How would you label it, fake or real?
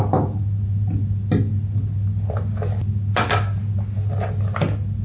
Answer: real